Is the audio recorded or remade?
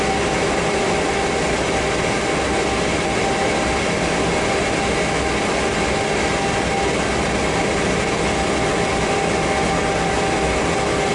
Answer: recorded